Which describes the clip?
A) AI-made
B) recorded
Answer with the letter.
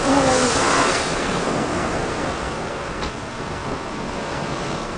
A